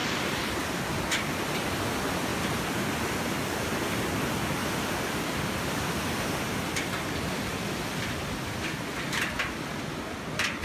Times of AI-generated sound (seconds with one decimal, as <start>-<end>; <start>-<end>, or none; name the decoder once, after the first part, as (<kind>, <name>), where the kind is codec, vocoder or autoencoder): 0.0-0.8 (vocoder, BigVGAN v2); 2.3-3.8; 4.6-9.8